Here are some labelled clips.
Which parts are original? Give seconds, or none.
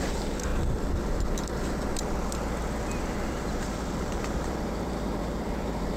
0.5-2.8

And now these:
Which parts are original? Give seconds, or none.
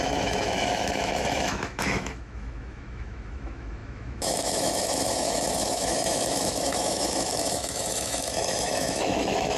none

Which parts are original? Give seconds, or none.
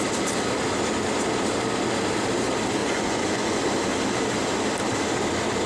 0.0-2.8; 3.6-5.7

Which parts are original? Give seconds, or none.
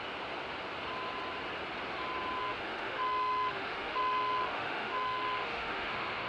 0.0-2.4